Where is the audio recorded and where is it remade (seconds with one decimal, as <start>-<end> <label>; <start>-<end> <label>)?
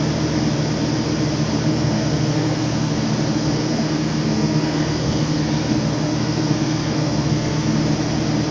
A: 0.0-1.7 recorded; 1.7-2.9 remade; 2.9-3.3 recorded; 3.3-7.7 remade; 7.7-8.5 recorded